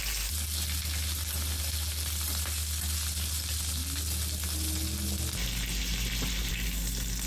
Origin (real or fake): real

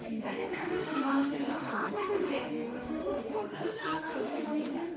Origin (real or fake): fake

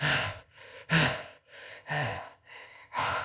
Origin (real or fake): fake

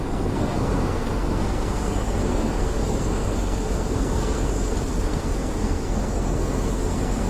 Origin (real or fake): fake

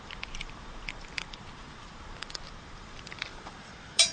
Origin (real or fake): fake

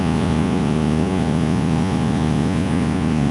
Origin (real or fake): fake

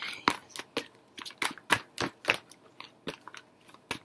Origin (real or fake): real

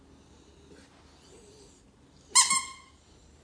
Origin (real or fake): real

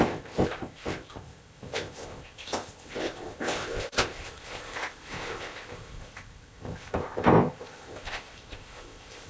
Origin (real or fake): fake